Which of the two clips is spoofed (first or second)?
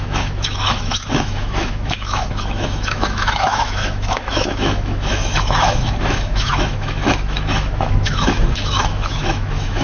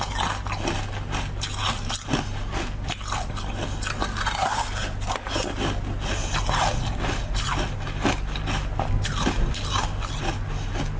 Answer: first